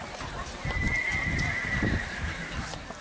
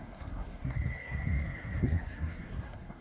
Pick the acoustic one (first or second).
first